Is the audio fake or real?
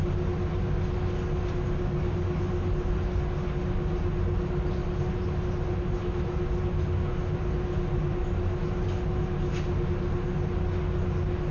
real